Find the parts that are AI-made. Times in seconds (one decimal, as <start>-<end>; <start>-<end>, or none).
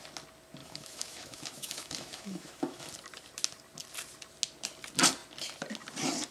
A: 0.6-2.9